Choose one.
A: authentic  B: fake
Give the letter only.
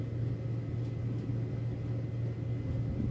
A